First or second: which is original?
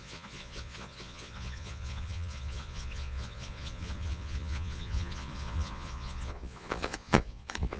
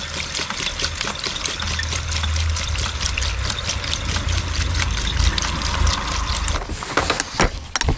second